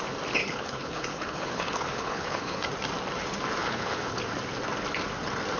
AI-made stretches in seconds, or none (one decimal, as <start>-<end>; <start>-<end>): 0.4-2.6; 3.6-4.2